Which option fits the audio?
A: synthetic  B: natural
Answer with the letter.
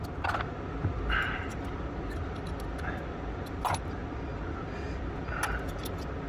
B